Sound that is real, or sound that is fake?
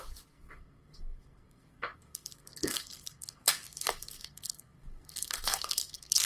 fake